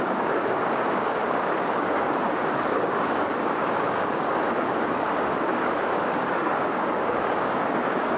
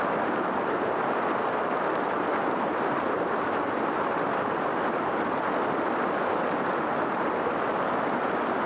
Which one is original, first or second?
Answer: second